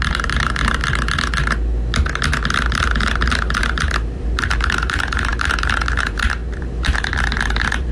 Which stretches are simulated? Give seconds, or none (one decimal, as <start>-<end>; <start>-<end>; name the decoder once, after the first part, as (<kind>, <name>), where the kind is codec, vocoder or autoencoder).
0.0-0.8 (vocoder, BigVGAN v2); 2.7-7.9